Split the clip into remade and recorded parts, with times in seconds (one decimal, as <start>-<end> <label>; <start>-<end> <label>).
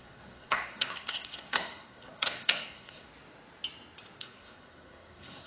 0.0-3.1 remade; 3.1-4.2 recorded; 4.2-5.5 remade